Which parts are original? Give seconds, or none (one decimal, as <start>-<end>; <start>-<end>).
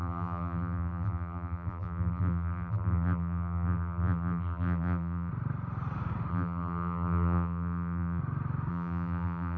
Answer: 5.3-6.3; 8.2-8.7